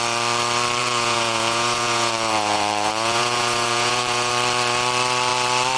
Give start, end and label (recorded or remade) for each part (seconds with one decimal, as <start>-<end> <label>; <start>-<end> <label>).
0.0-0.8 recorded; 0.8-4.3 remade; 4.3-5.8 recorded